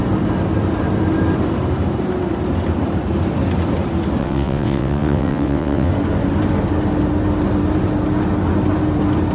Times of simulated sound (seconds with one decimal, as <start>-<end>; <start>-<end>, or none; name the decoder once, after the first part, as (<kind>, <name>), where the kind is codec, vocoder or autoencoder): 4.2-5.9 (vocoder, WaveNeXt)